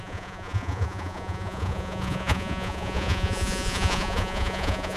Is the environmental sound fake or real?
fake